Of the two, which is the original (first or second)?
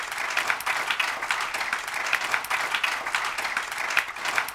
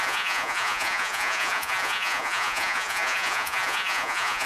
first